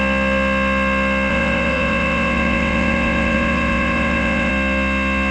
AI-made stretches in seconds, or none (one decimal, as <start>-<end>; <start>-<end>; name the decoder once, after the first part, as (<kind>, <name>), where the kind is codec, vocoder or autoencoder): 1.3-4.5 (vocoder, WaveNeXt)